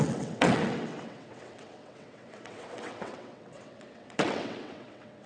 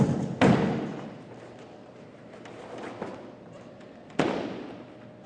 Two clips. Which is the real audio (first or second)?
second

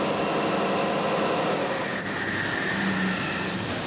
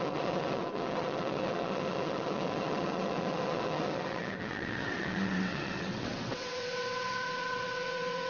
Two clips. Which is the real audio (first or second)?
first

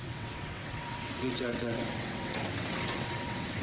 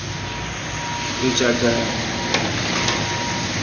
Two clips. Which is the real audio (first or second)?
second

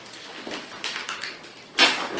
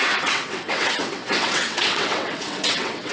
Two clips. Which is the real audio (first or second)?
first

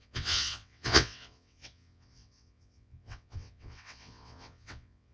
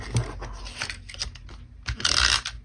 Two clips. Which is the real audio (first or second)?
second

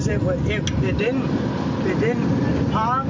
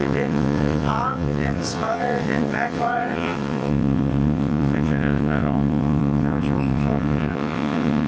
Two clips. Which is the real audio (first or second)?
first